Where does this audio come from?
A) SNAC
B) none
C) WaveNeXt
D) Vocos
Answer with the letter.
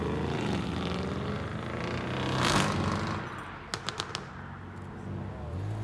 B